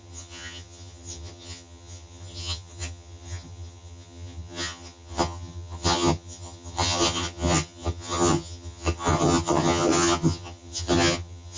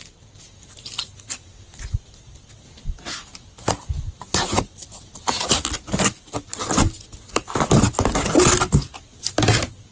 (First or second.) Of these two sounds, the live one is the second